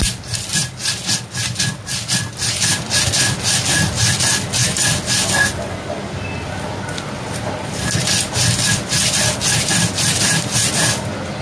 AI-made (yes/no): no